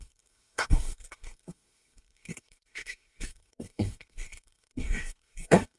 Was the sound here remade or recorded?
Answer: remade